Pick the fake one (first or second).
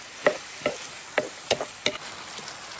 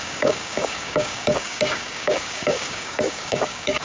second